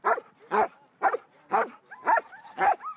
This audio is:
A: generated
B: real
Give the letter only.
B